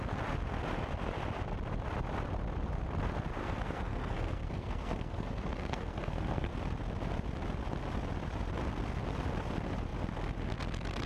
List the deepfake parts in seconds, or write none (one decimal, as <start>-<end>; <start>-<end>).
3.4-6.5